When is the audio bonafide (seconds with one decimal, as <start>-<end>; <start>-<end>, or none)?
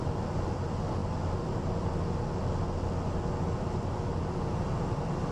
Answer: 0.0-5.3